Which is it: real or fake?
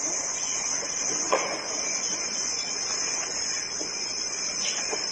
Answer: fake